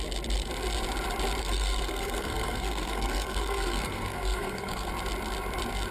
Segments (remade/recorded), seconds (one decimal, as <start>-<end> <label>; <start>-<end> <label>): 0.0-1.4 recorded; 1.4-4.9 remade; 4.9-5.9 recorded